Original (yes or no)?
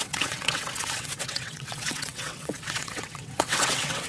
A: no